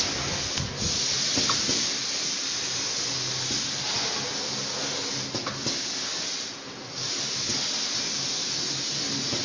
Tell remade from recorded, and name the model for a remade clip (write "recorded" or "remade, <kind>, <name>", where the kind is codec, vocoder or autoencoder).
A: recorded